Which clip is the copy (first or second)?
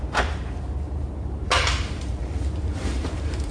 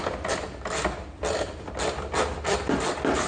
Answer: first